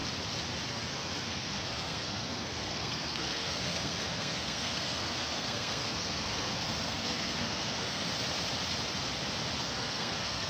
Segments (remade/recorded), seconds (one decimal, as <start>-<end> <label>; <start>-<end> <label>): 0.0-0.7 recorded; 0.7-8.1 remade; 8.1-9.6 recorded; 9.6-10.5 remade